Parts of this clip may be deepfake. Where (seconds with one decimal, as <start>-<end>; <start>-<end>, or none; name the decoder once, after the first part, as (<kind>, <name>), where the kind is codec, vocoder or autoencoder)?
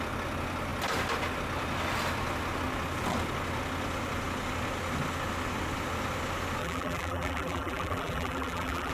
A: 6.6-8.9 (vocoder, BigVGAN v2)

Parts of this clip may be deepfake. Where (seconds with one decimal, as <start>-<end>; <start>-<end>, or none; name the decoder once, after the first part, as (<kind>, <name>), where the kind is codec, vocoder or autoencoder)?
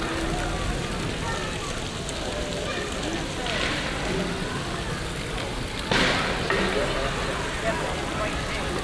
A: none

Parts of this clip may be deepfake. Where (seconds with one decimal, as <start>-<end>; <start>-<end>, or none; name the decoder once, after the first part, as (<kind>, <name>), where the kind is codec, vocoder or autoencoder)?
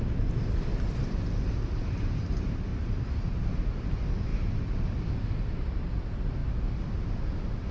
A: none